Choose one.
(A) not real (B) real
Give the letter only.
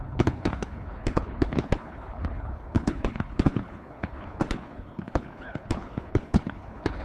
A